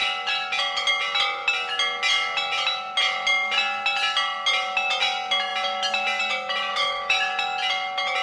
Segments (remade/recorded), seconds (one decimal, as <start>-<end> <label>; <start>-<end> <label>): 0.0-6.7 recorded; 6.7-7.3 remade; 7.3-8.2 recorded